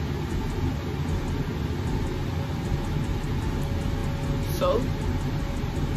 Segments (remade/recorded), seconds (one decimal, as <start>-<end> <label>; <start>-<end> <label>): 0.0-6.0 recorded